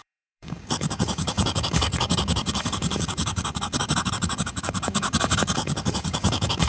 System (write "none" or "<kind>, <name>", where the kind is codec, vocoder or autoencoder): codec, DAC